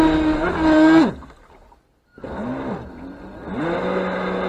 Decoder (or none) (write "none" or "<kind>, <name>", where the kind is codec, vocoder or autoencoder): none